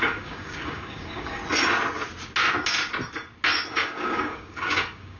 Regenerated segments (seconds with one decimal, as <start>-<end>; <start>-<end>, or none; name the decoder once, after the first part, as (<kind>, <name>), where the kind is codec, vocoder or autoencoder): 0.0-1.4 (codec, DAC); 3.7-5.2